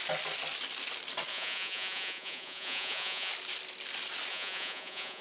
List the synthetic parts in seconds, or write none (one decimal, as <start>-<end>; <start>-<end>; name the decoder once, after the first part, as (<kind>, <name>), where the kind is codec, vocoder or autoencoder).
1.3-3.3 (vocoder, Vocos); 4.3-5.2